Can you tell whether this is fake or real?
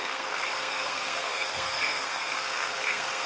fake